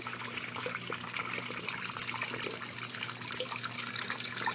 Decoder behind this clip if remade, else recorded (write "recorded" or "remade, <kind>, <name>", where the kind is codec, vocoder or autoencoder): recorded